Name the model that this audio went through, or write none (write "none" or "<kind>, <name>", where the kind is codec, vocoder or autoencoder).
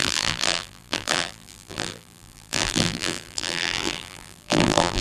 vocoder, BigVGAN v2